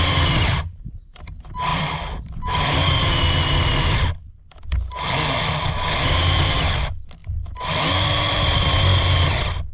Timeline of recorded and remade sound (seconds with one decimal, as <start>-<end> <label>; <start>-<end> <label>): 0.0-1.7 recorded; 1.7-2.3 remade; 2.3-7.2 recorded; 7.2-9.0 remade; 9.0-9.7 recorded